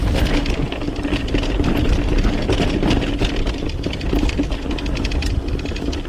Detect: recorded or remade recorded